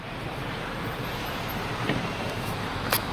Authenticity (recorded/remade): remade